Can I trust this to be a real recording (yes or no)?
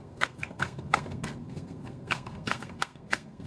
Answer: no